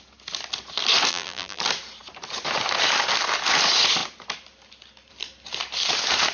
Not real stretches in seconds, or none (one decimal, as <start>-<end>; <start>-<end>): 1.1-1.6